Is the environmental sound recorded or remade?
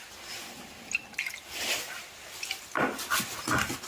recorded